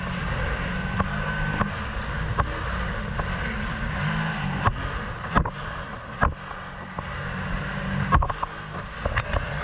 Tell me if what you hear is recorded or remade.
recorded